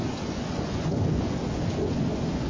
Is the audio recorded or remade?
remade